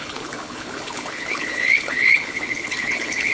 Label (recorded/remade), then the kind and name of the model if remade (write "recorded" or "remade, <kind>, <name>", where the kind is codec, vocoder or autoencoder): remade, codec, HILCodec